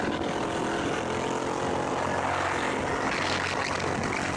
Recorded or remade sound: recorded